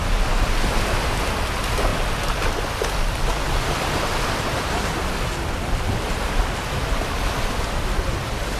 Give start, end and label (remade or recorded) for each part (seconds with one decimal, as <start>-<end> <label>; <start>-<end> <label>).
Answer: 0.0-8.6 recorded